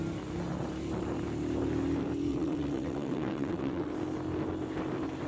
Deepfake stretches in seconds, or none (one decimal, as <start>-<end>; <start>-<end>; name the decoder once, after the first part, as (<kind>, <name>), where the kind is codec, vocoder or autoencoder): 2.3-3.9 (vocoder, WaveNeXt)